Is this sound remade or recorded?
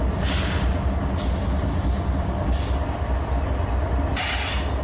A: recorded